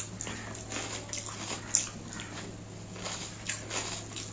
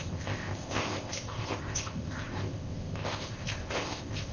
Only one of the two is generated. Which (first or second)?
second